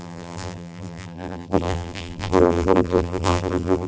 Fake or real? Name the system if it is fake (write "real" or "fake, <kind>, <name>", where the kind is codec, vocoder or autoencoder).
fake, vocoder, BigVGAN v2